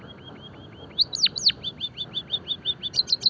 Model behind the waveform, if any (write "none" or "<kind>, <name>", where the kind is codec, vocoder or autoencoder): none